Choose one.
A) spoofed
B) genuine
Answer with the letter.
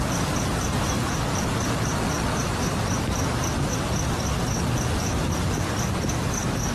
B